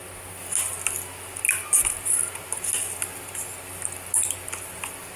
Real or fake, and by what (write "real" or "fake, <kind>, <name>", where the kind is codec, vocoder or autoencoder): real